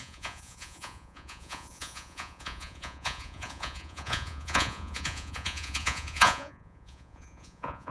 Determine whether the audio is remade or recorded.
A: remade